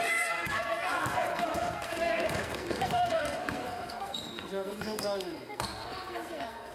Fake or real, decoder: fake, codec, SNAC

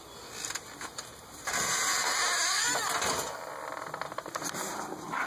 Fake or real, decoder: real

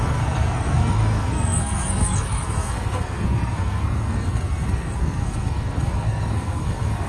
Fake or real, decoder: fake, codec, SNAC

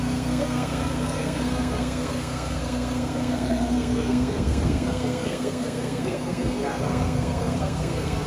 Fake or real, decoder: fake, codec, SNAC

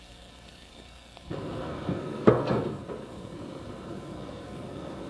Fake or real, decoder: fake, codec, SNAC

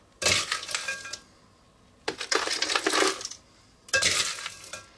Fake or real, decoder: real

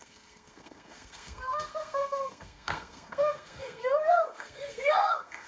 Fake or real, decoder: fake, codec, SNAC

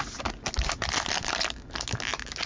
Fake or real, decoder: real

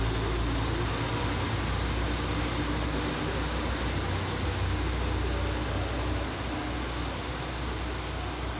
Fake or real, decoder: real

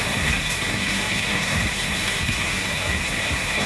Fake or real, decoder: fake, codec, SNAC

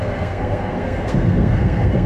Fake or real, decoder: fake, codec, SNAC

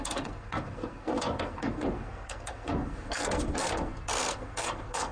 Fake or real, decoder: fake, codec, SNAC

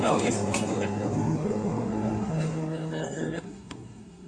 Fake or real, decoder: fake, codec, SNAC